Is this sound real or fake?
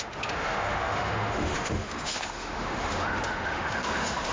fake